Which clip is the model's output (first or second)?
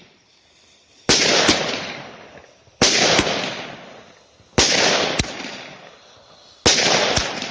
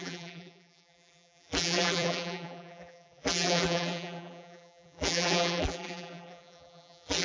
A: second